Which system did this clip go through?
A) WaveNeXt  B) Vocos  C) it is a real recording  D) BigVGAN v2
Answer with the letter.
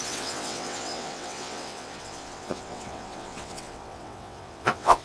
A